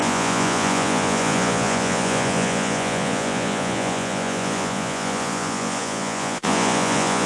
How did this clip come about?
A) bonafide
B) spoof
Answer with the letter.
B